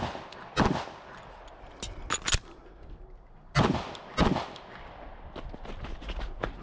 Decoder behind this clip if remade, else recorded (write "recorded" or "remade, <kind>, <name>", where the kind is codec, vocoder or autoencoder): recorded